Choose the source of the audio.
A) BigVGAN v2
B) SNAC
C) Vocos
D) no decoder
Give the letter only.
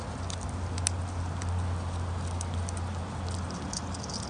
D